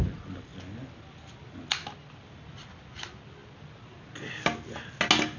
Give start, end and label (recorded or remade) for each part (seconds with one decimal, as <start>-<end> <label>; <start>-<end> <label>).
0.0-5.4 recorded